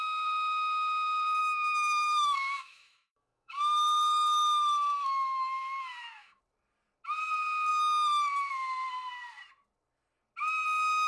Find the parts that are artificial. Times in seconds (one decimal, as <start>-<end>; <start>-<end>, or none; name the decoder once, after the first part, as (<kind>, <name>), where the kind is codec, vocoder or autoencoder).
1.4-6.4 (autoencoder, DAC-VAE)